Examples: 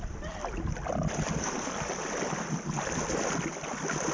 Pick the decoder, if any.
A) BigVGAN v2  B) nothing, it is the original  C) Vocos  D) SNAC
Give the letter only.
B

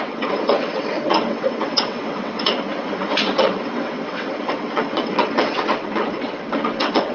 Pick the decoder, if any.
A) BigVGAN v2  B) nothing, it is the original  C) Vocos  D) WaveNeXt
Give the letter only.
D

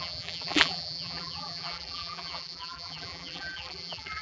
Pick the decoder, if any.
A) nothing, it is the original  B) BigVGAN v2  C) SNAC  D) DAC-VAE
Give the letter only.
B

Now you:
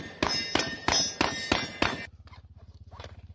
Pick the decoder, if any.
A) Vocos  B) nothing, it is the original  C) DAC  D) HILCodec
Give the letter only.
B